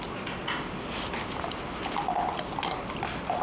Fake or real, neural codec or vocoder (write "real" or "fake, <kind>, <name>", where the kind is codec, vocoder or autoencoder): real